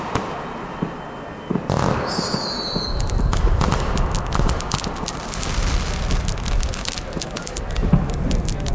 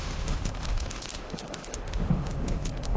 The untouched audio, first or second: first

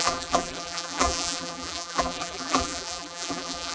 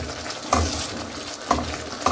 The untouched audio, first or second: second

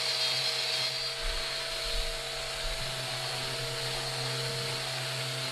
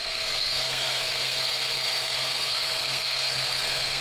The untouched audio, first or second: first